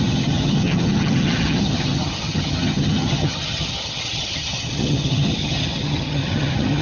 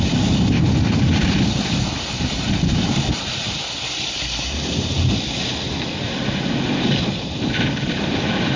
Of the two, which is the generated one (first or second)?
first